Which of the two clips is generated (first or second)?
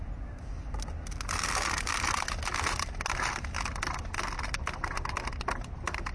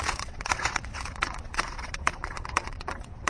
second